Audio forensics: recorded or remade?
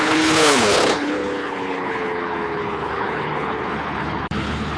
remade